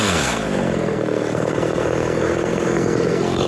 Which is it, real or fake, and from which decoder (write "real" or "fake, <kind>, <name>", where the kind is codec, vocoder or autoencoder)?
fake, codec, SNAC